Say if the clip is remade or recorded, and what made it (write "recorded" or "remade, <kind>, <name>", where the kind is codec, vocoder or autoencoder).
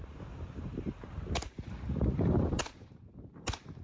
remade, vocoder, BigVGAN v2